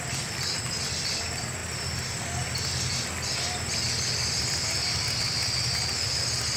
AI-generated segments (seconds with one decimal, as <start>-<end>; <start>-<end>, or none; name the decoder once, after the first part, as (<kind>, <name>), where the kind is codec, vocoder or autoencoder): none